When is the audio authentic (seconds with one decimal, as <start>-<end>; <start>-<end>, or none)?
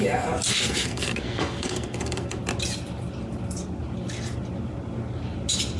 0.0-0.5; 2.4-5.8